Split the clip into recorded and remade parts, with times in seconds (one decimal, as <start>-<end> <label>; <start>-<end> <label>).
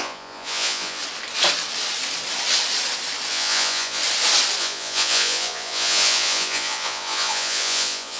0.0-1.0 remade; 1.0-3.3 recorded; 3.3-4.0 remade; 4.0-4.6 recorded; 4.6-8.2 remade